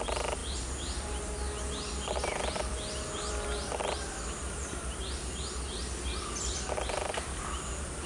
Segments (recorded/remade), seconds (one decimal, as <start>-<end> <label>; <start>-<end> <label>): 0.0-8.1 recorded